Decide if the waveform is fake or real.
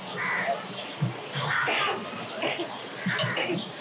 real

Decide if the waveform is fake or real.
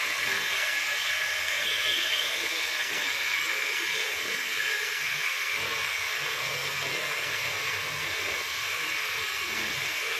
fake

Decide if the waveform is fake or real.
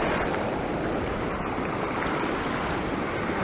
real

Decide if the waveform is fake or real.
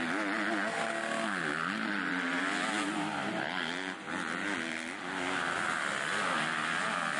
real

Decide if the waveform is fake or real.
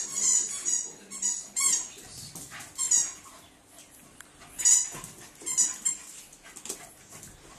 real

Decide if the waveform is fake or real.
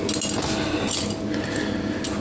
real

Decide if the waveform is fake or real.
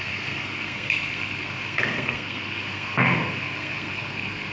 fake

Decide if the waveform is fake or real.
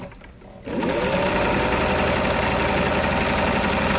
real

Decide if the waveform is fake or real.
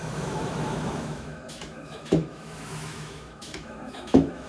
fake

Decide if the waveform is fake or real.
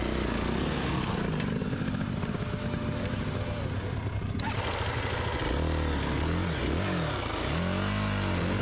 real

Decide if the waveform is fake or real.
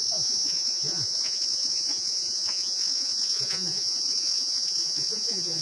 fake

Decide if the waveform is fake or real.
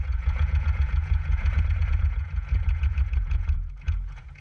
fake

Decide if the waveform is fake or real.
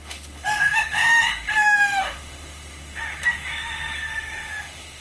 fake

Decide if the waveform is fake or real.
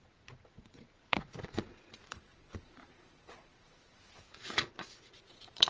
fake